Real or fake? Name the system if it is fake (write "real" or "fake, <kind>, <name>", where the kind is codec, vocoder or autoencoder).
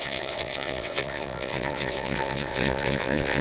fake, vocoder, WaveNeXt